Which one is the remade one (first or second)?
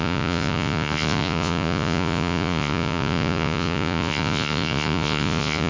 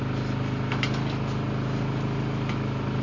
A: first